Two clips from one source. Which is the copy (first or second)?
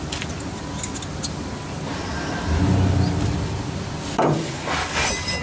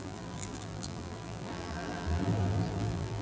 second